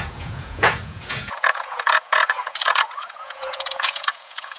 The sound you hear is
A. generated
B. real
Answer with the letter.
A